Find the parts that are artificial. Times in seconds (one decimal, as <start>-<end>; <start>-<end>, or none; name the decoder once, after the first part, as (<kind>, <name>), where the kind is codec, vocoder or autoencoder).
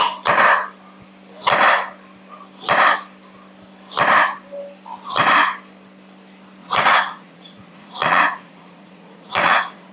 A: 6.6-9.9 (vocoder, Vocos)